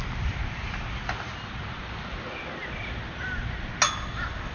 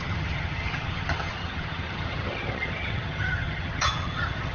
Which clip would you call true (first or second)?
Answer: first